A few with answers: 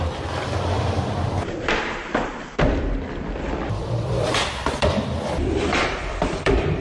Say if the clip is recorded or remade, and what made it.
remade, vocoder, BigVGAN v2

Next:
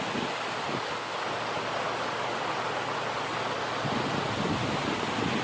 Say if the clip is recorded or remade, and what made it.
recorded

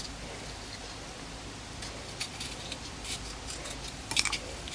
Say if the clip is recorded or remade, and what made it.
recorded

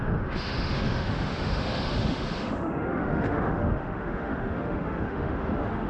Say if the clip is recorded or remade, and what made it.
remade, autoencoder, DAC-VAE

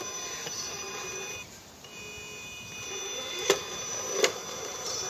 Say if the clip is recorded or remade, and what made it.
recorded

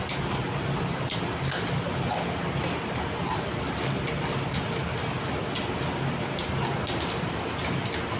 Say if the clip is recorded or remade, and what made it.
recorded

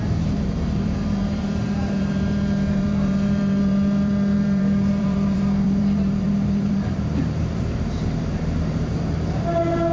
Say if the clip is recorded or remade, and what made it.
remade, vocoder, BigVGAN v2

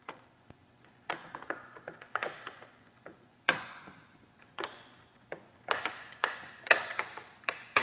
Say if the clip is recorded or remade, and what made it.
remade, vocoder, Vocos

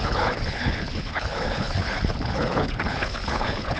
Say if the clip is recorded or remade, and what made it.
remade, codec, HILCodec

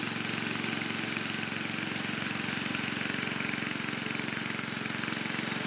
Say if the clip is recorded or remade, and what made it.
recorded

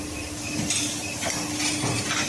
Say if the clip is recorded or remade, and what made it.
recorded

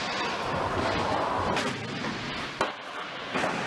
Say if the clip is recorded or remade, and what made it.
recorded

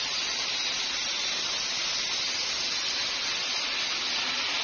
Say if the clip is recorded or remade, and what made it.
recorded